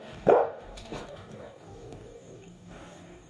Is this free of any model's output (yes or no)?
no